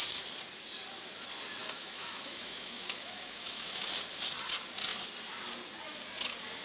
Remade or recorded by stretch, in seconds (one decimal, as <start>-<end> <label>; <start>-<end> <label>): 0.0-1.6 recorded; 1.6-3.8 remade; 3.8-6.6 recorded